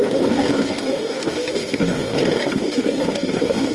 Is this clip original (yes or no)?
no